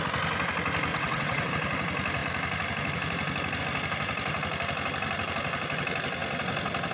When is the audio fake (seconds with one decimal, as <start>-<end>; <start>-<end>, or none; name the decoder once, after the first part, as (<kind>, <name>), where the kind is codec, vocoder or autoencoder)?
0.9-1.5 (vocoder, WaveNeXt)